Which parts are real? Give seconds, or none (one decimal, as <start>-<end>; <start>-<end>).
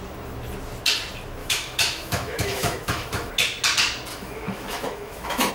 0.0-1.4; 3.3-4.1